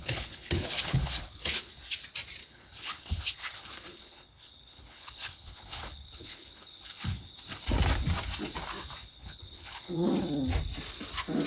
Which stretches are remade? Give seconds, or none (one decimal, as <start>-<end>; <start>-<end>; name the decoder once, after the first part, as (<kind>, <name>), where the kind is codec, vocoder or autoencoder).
0.0-1.7 (codec, HILCodec); 2.4-7.4; 9.0-10.1